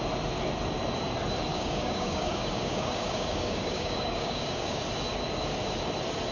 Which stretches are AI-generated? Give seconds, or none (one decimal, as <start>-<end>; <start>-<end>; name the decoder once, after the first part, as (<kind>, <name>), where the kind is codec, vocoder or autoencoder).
1.5-4.8 (codec, DAC)